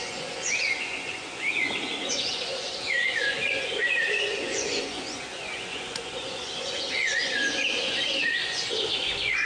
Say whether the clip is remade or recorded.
remade